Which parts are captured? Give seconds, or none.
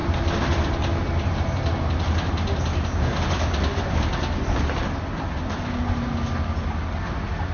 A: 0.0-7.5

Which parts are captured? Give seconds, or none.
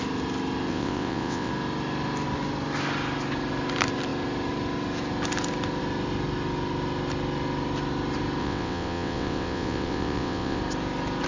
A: 0.0-0.7; 1.5-8.4; 10.6-11.3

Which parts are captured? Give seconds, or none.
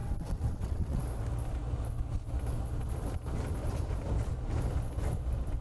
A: 1.0-5.6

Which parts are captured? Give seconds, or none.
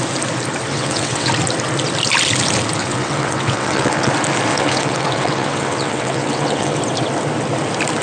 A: 0.0-0.7; 1.3-2.8; 4.1-4.5; 6.8-8.0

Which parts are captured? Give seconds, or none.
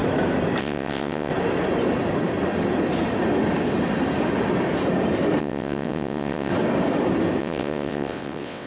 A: 0.0-0.6; 1.3-5.4; 6.5-7.4